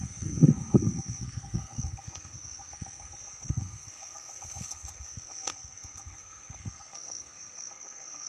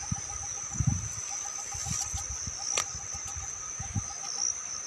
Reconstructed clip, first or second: first